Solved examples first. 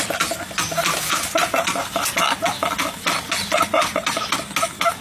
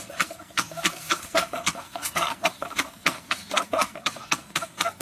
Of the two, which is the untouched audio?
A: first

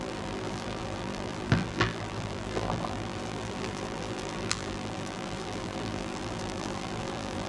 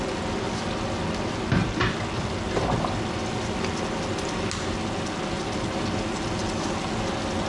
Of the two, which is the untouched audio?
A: second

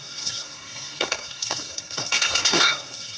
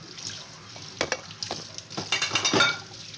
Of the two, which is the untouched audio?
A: second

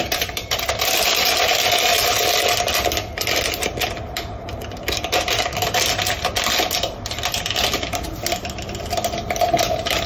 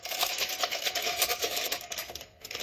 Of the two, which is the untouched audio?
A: first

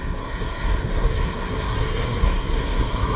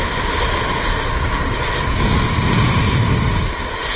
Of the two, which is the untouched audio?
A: second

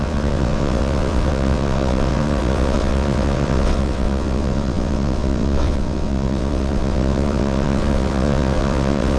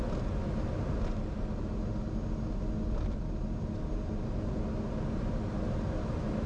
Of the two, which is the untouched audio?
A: second